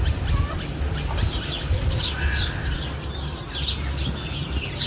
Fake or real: real